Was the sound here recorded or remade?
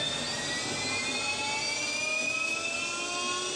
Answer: recorded